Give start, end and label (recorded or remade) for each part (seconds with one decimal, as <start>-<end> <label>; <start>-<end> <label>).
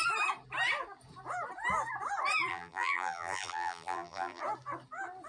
0.0-2.5 recorded; 2.5-4.4 remade; 4.4-5.3 recorded